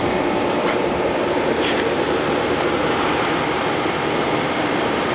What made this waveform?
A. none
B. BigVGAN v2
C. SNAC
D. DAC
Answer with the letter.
B